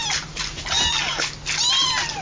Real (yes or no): yes